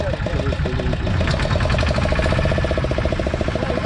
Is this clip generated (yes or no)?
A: no